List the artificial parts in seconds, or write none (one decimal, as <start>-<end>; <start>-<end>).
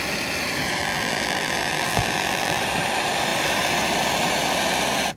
0.8-2.6